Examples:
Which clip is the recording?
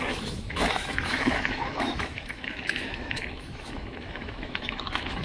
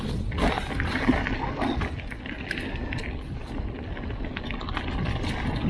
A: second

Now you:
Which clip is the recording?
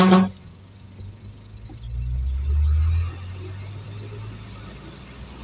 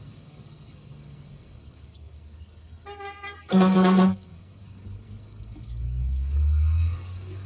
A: first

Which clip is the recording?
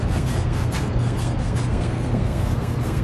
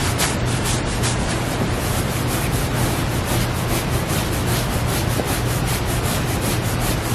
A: second